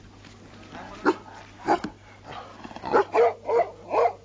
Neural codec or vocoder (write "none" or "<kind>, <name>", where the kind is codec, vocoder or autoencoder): none